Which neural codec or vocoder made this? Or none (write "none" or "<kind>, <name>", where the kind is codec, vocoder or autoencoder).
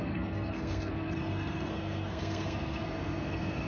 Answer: codec, SNAC